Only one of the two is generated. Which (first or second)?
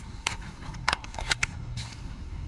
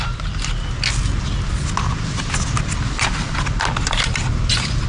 first